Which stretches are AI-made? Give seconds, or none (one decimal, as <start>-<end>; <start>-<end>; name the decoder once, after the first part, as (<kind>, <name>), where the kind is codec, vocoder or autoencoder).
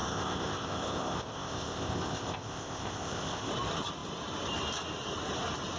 0.0-3.5 (codec, ZipCodec)